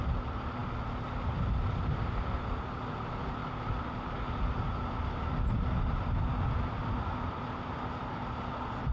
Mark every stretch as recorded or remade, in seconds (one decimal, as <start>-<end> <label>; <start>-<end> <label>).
0.0-3.4 recorded; 3.4-8.3 remade; 8.3-8.9 recorded